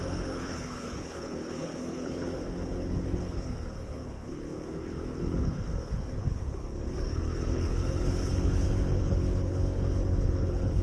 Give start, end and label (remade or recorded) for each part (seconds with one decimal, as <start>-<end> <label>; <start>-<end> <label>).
0.0-10.8 remade